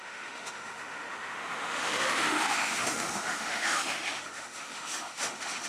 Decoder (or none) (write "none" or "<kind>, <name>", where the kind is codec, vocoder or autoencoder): autoencoder, DAC-VAE